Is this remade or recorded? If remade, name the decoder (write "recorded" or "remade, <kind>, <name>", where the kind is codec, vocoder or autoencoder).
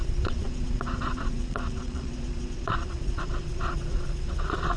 remade, vocoder, Vocos